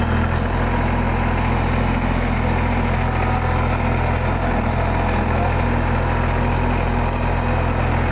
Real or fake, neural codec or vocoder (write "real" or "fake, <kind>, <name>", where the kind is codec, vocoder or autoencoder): real